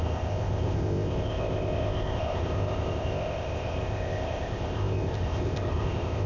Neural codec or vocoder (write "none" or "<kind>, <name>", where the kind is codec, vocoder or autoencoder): codec, ZipCodec